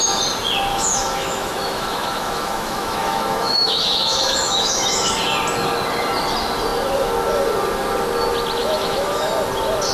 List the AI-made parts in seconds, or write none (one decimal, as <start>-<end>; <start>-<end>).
0.7-5.1; 8.6-9.3